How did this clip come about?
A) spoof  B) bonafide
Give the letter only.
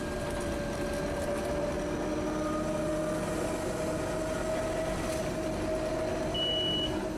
B